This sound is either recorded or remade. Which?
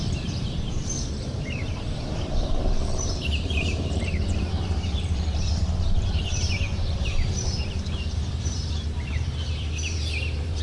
remade